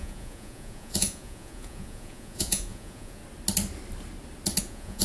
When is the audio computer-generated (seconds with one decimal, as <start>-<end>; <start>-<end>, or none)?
0.0-3.2; 4.6-5.0